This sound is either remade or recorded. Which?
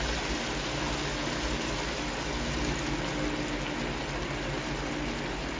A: recorded